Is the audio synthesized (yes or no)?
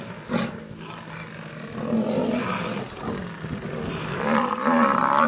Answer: no